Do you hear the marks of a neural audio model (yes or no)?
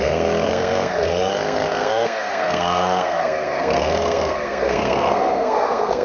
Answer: yes